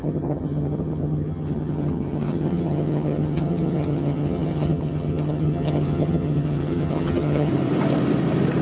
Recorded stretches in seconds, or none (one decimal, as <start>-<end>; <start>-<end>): 7.5-8.6